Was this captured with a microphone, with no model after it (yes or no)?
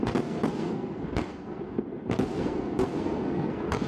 no